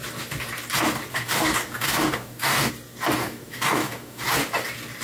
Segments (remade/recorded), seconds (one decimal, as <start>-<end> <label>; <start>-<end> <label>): 0.0-1.1 recorded; 1.1-2.7 remade; 2.7-3.2 recorded; 3.2-4.3 remade; 4.3-5.0 recorded